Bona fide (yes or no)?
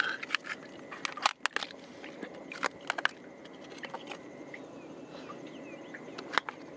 yes